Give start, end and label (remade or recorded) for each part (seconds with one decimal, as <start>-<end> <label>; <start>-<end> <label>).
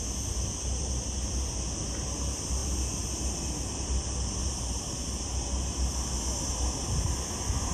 0.0-7.7 recorded